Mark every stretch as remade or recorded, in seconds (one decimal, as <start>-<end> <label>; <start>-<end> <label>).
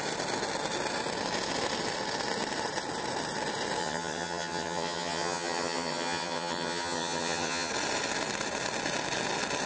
0.0-3.8 recorded; 3.8-7.7 remade; 7.7-9.7 recorded